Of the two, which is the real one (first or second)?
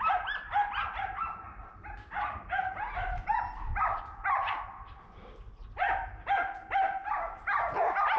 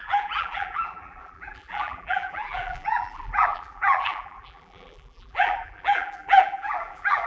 first